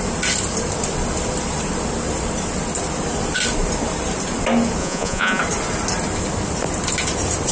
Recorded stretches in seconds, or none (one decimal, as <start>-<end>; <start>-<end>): 0.0-4.8; 5.4-7.5